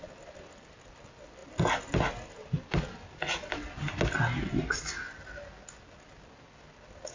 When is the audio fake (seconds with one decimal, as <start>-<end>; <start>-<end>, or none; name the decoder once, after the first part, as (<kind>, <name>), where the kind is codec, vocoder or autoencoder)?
none